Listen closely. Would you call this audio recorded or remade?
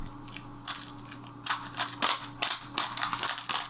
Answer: recorded